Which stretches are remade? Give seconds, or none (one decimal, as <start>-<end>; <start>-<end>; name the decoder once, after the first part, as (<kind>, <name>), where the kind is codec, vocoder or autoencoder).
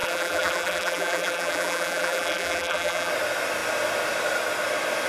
0.0-3.1 (vocoder, BigVGAN v2)